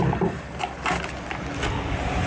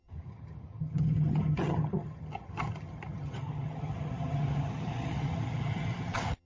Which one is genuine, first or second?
first